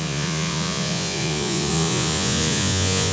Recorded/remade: remade